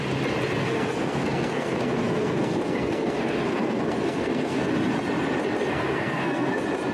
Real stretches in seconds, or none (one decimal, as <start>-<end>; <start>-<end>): 0.0-0.6; 4.7-5.7; 6.5-6.9